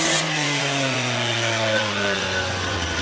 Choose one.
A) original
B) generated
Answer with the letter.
B